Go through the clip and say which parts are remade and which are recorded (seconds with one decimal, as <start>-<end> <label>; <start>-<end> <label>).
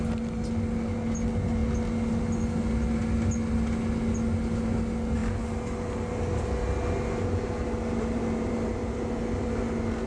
0.0-10.1 recorded